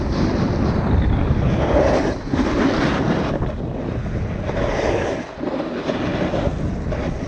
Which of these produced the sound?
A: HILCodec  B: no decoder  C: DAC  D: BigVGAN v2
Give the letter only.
B